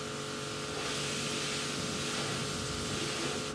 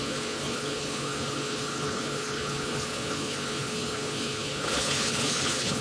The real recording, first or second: first